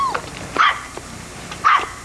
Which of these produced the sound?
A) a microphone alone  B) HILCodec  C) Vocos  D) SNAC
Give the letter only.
A